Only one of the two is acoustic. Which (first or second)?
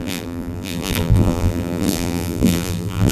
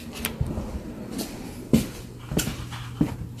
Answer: second